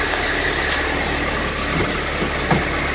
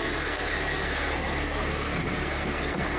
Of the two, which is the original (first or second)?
first